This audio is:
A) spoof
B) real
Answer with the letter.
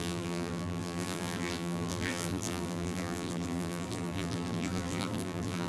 A